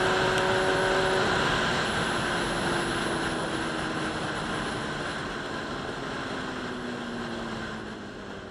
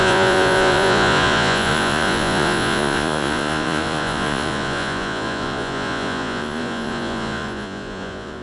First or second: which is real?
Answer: first